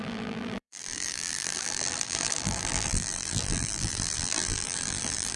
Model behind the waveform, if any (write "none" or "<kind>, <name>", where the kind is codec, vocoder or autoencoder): vocoder, BigVGAN v2